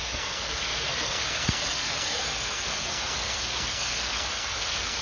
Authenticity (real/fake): fake